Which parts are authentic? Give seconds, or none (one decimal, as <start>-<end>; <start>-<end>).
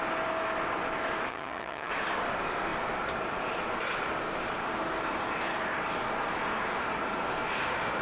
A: 0.0-1.3; 1.9-8.0